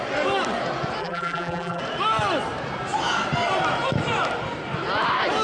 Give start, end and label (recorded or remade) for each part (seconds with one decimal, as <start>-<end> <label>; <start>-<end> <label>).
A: 0.0-1.0 recorded; 1.0-1.8 remade; 1.8-5.4 recorded